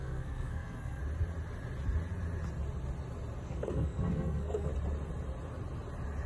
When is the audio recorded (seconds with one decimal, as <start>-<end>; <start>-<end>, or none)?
1.0-3.4; 4.7-6.3

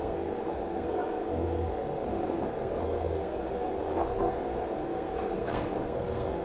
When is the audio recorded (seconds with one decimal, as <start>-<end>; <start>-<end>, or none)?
none

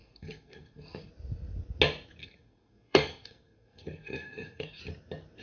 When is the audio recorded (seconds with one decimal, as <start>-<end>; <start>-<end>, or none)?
1.1-2.2; 4.8-5.4

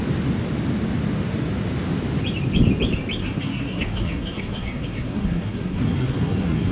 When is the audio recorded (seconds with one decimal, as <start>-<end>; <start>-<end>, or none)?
0.0-3.2

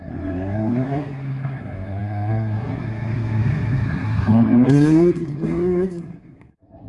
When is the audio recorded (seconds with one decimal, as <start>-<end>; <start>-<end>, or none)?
none

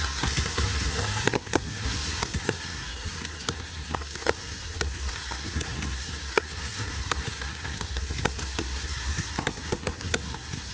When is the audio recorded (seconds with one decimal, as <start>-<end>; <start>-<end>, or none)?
none

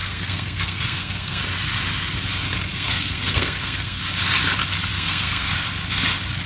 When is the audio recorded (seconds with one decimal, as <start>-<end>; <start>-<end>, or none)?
1.4-2.7; 4.0-4.9; 5.5-6.5

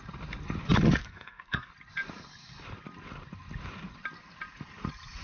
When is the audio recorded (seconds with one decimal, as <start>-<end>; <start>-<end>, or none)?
0.0-1.0; 1.7-5.2